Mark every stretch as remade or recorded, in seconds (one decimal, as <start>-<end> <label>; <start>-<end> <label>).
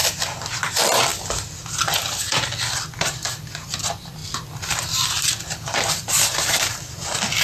0.0-0.5 recorded; 0.5-1.1 remade; 1.1-3.0 recorded; 3.0-4.2 remade; 4.2-5.9 recorded; 5.9-7.4 remade